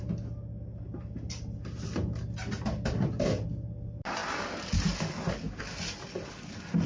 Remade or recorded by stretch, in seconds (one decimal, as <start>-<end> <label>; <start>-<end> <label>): 0.0-6.9 recorded